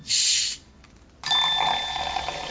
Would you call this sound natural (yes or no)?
yes